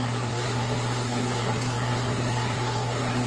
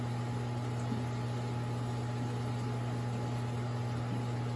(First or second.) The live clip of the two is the second